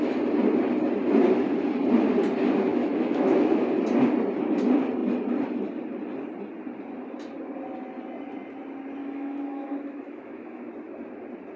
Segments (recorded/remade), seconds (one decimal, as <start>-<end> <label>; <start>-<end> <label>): 0.0-2.7 recorded; 2.7-3.5 remade; 3.5-9.0 recorded; 9.0-10.7 remade; 10.7-11.6 recorded